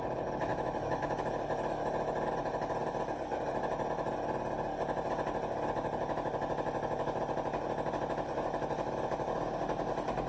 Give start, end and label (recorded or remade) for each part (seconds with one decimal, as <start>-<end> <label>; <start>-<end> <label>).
0.0-0.5 recorded; 0.5-1.2 remade; 1.2-10.3 recorded